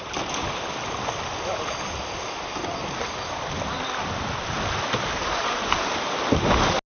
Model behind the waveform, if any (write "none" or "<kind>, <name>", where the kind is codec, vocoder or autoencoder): none